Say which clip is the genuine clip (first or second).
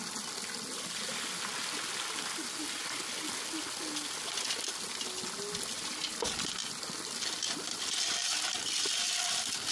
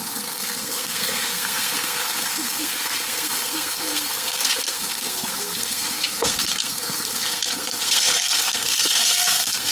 first